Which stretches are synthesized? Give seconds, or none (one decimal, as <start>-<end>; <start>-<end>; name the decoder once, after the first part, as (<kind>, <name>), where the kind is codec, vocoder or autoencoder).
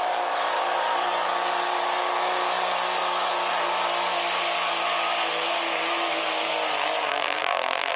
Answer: 7.1-8.0 (vocoder, BigVGAN v2)